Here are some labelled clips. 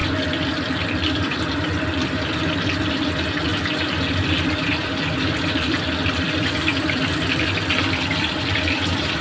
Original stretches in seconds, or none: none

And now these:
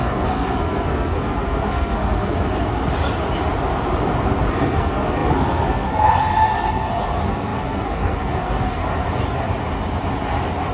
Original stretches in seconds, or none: 2.8-4.5; 8.8-10.7

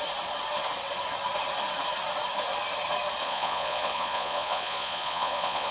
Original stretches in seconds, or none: 0.0-3.2

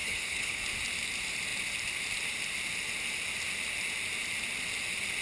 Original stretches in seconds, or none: 0.6-5.2